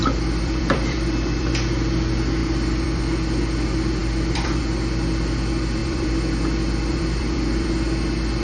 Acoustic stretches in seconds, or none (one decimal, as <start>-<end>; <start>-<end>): 1.5-2.4; 3.0-4.0; 4.6-5.8; 7.7-8.4